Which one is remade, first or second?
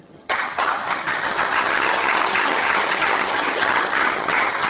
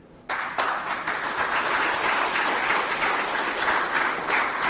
first